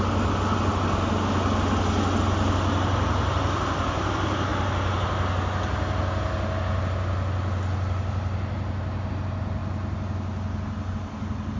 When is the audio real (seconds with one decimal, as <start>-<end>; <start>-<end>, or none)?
0.0-11.6